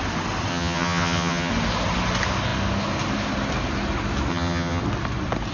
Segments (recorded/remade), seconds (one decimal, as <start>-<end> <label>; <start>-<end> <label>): 0.0-0.5 recorded; 0.5-1.5 remade; 1.5-4.3 recorded; 4.3-4.8 remade; 4.8-5.5 recorded